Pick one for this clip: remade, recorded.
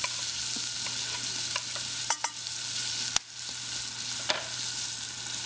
recorded